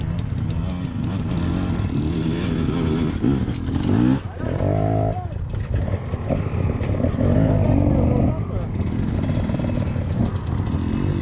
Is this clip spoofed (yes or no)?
no